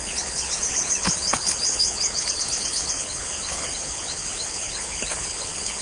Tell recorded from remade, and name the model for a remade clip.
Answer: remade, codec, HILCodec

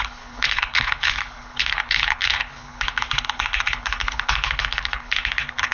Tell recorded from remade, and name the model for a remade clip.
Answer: remade, codec, HILCodec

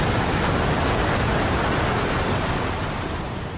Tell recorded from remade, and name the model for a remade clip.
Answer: recorded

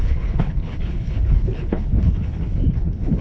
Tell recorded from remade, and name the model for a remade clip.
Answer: remade, codec, HILCodec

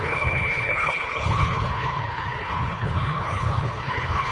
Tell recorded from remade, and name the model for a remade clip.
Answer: remade, codec, HILCodec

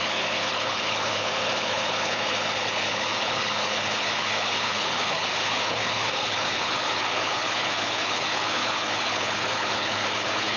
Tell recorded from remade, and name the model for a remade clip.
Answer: remade, codec, HILCodec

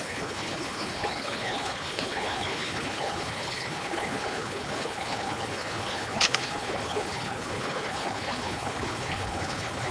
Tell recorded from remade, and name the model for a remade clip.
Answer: remade, codec, HILCodec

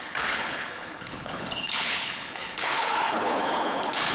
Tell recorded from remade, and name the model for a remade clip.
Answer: remade, codec, HILCodec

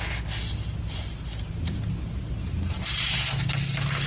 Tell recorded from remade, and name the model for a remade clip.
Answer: recorded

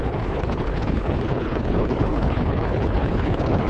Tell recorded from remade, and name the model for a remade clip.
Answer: remade, codec, HILCodec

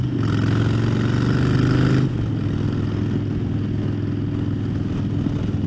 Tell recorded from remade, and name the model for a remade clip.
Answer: recorded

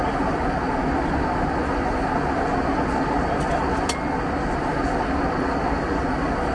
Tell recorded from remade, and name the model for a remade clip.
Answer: recorded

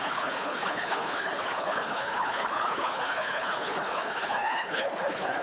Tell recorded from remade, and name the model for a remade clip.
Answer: remade, codec, HILCodec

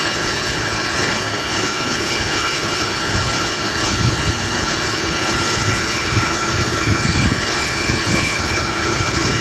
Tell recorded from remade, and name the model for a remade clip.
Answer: remade, codec, HILCodec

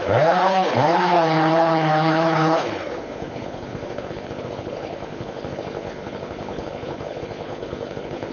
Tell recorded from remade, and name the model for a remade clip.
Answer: remade, codec, HILCodec